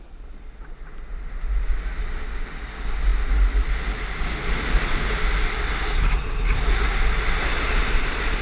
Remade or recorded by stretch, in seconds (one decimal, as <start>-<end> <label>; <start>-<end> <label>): 0.0-8.4 recorded